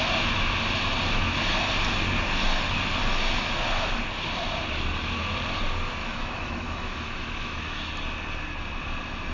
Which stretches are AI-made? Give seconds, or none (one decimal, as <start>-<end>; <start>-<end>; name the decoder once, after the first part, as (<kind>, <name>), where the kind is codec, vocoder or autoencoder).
6.0-7.9 (autoencoder, DAC-VAE)